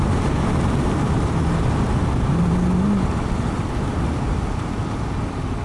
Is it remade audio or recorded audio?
recorded